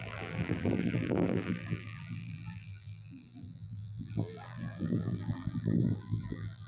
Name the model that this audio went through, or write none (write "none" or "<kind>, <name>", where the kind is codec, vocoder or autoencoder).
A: vocoder, BigVGAN v2